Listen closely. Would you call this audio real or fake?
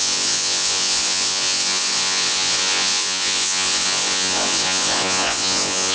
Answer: fake